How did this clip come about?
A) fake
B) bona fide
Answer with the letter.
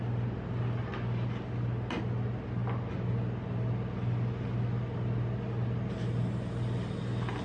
B